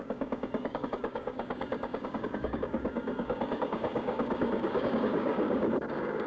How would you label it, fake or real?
fake